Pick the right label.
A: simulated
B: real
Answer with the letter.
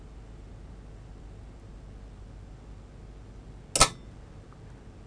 B